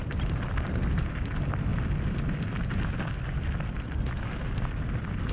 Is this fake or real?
real